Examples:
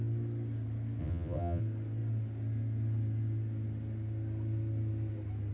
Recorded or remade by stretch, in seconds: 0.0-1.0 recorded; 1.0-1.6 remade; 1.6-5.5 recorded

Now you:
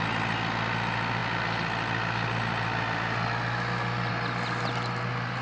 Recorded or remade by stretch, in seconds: 0.0-5.4 recorded

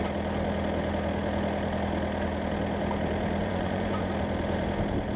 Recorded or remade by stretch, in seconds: 0.0-3.4 recorded; 3.4-4.1 remade; 4.1-5.2 recorded

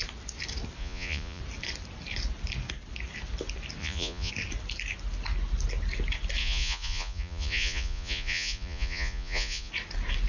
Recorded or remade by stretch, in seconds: 0.0-0.8 recorded; 0.8-1.4 remade; 1.4-3.8 recorded; 3.8-4.3 remade; 4.3-6.4 recorded; 6.4-9.7 remade; 9.7-10.3 recorded

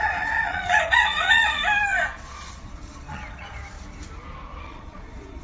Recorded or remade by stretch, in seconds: 0.0-1.6 remade; 1.6-2.2 recorded; 2.2-3.6 remade; 3.6-4.6 recorded; 4.6-5.4 remade

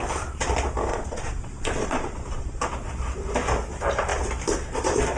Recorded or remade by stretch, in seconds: 0.0-0.9 recorded; 0.9-2.6 remade; 2.6-5.2 recorded

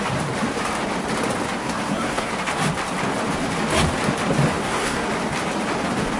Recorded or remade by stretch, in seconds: 0.0-1.6 recorded; 1.6-2.3 remade; 2.3-4.6 recorded; 4.6-5.1 remade; 5.1-6.2 recorded

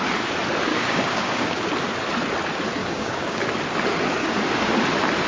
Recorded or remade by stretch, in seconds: 0.0-0.7 recorded; 0.7-1.7 remade; 1.7-2.8 recorded; 2.8-3.5 remade; 3.5-4.2 recorded; 4.2-4.7 remade; 4.7-5.3 recorded